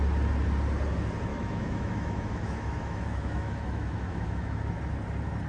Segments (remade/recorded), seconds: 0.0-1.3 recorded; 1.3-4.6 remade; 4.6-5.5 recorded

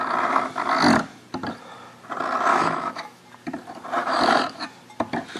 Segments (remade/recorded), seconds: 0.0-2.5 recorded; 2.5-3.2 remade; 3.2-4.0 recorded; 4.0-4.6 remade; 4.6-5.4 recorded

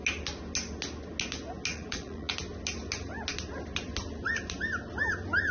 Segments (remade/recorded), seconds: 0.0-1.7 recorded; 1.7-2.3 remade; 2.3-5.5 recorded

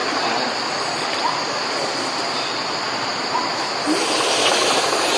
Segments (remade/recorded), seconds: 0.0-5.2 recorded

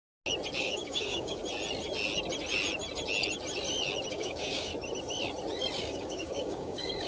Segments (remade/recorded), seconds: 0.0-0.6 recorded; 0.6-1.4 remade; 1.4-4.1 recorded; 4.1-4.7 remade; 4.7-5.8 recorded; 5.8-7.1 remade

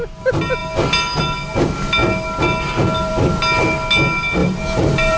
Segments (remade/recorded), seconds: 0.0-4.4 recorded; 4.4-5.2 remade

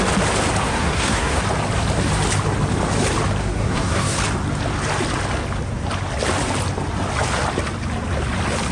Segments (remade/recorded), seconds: 0.0-0.6 recorded; 0.6-1.4 remade; 1.4-3.4 recorded; 3.4-4.2 remade; 4.2-8.7 recorded